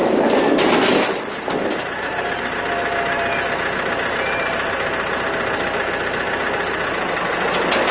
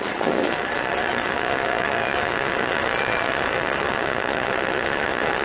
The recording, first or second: first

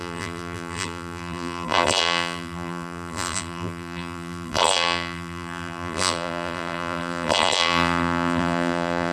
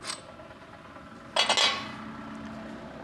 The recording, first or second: second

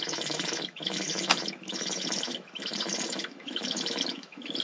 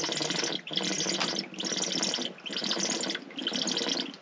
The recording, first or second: second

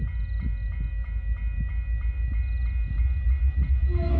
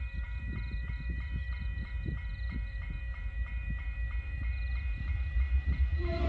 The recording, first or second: first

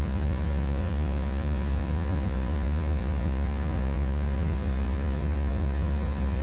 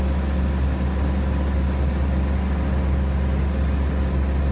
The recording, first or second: second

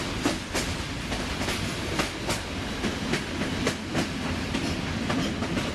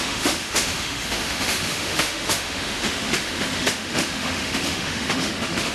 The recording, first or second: first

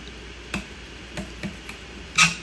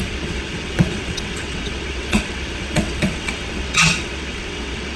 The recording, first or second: first